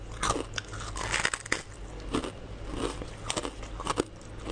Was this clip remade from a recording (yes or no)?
no